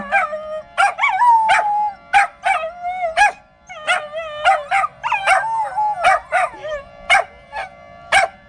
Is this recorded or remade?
recorded